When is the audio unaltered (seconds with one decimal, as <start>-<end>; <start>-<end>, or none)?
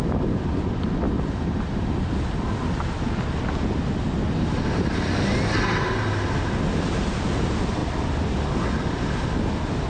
0.0-9.9